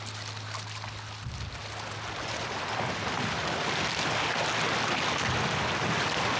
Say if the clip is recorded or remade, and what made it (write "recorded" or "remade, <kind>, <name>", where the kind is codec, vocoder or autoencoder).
recorded